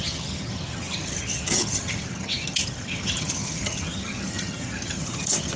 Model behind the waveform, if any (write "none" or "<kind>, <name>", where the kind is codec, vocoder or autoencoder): vocoder, HiFi-GAN